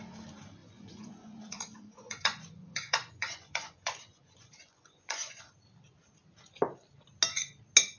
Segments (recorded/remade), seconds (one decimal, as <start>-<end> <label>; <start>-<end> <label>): 0.0-0.6 recorded; 0.6-5.4 remade; 5.4-8.0 recorded